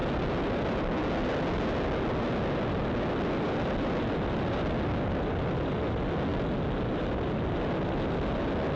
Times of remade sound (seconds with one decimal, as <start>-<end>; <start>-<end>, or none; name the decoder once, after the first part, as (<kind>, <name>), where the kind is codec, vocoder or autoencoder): none